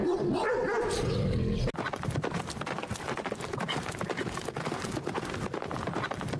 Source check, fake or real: real